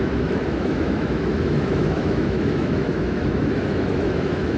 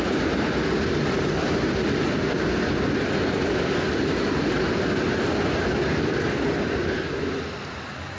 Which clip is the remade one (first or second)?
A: first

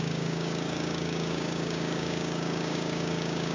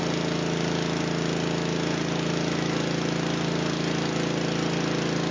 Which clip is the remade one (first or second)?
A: first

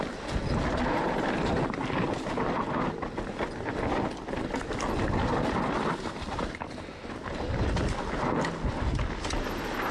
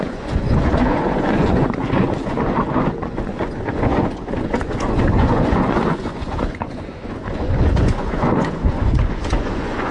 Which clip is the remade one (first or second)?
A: second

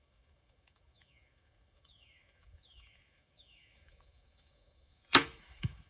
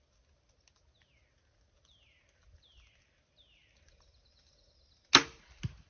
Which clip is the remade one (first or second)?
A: first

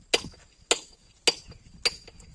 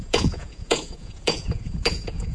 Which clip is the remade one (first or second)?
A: second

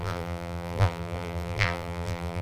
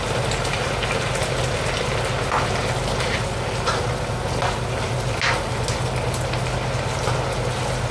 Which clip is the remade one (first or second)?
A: first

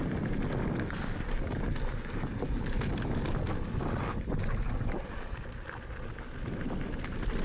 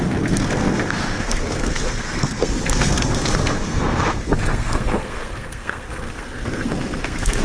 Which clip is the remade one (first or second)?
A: second